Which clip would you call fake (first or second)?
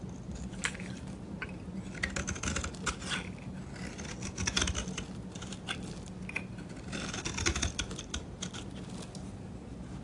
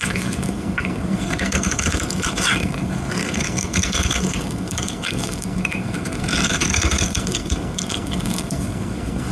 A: second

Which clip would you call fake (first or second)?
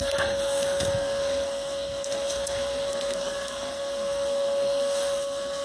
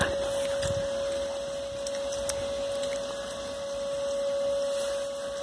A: first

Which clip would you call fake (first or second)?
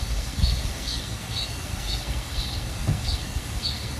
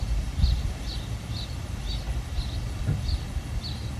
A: first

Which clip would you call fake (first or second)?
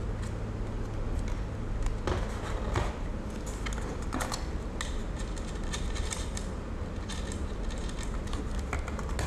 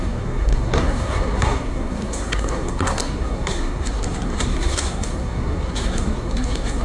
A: second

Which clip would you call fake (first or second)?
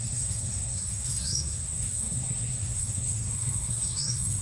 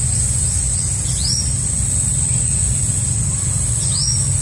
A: first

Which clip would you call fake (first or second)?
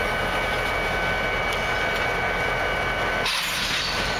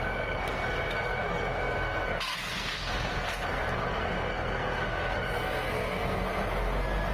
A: second